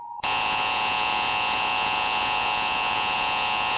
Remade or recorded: remade